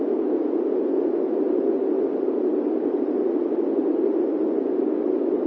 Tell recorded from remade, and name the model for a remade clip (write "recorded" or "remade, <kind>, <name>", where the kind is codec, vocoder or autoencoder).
recorded